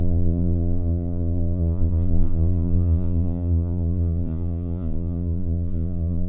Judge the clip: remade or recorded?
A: remade